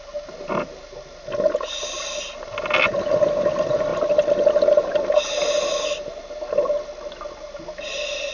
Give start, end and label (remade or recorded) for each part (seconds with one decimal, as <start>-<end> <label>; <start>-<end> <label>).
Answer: 0.0-8.3 recorded